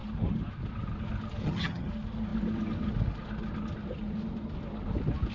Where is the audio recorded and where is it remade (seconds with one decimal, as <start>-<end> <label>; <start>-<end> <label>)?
0.0-1.4 recorded; 1.4-1.9 remade; 1.9-5.3 recorded